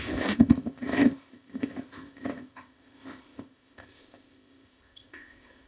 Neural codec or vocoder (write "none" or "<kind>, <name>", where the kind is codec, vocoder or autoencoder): codec, ZipCodec